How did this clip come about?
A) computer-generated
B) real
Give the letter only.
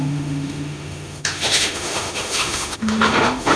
A